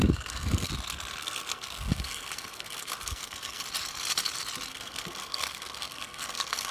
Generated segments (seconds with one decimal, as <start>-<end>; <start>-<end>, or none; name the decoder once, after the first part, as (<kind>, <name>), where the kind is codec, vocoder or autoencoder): 0.0-0.7 (codec, SNAC); 1.2-3.6; 4.7-6.7